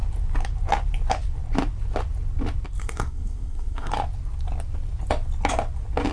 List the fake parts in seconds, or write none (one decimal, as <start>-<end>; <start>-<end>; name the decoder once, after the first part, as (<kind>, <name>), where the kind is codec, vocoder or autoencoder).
2.8-3.9 (codec, SNAC)